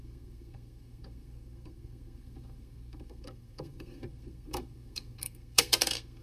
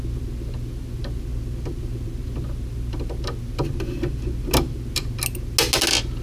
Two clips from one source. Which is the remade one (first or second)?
first